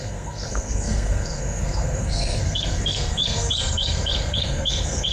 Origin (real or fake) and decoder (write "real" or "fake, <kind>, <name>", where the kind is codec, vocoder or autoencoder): fake, codec, SNAC